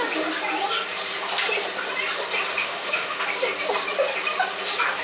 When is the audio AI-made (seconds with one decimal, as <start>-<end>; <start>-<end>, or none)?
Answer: 2.6-3.2